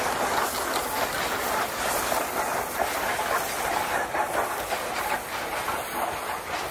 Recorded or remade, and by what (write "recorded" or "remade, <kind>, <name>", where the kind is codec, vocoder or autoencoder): recorded